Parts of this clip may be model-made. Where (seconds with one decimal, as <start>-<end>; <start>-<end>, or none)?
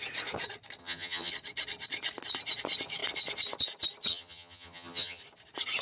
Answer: 0.8-1.3; 4.1-5.2